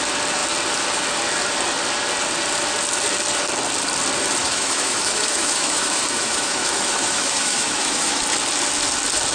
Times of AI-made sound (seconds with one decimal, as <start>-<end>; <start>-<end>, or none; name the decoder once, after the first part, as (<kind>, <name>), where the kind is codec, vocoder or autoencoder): 4.4-8.2 (autoencoder, DAC-VAE)